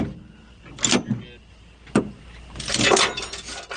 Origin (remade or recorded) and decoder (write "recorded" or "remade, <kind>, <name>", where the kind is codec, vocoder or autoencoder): recorded